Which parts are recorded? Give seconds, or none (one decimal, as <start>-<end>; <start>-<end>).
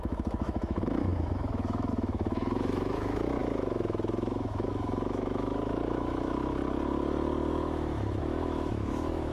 6.6-7.5